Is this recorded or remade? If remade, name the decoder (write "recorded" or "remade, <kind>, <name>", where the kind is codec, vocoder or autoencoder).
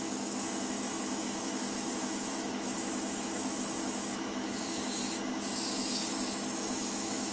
remade, autoencoder, DAC-VAE